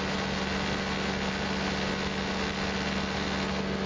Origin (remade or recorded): recorded